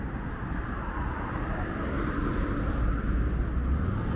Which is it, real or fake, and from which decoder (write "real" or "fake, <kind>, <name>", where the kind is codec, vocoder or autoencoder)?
real